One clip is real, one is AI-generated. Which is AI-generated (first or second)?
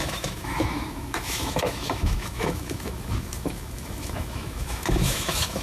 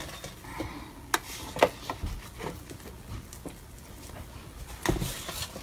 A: first